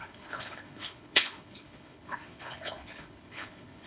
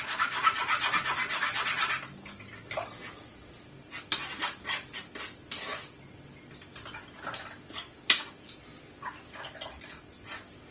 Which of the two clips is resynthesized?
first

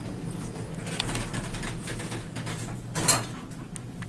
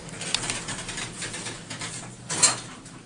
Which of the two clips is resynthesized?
second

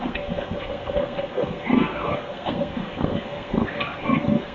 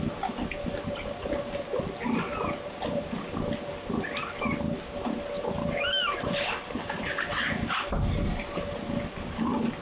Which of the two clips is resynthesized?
first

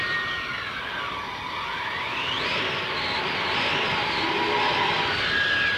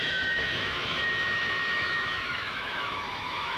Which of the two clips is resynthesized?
second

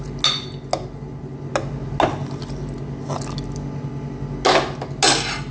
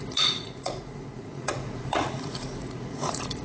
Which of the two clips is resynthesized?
second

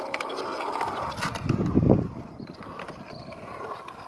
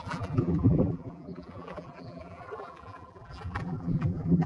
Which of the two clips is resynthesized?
second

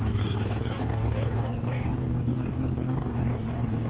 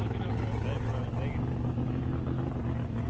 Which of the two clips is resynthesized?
first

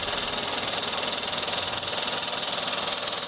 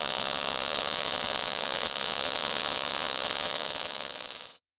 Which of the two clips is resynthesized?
second